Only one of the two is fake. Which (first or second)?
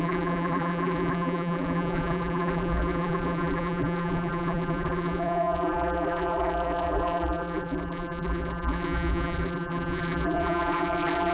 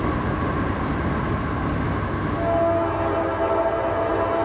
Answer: first